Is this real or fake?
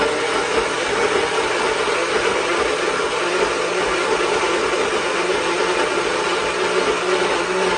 real